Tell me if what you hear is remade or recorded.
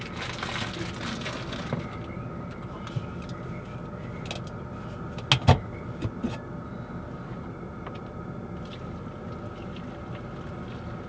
recorded